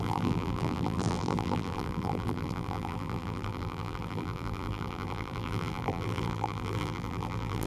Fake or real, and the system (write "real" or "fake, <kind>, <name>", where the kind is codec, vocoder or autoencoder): fake, vocoder, BigVGAN v2